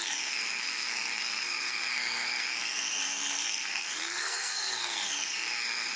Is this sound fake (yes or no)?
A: yes